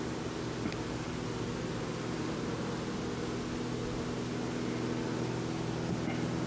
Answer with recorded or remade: recorded